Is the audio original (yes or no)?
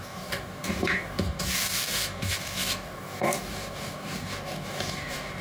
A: no